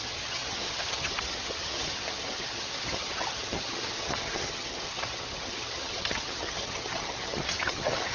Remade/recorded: remade